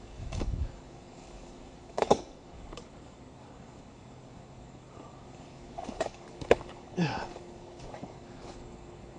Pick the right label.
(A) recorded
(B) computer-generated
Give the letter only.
B